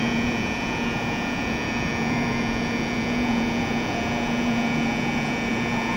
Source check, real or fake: fake